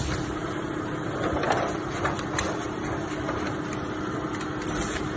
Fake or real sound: real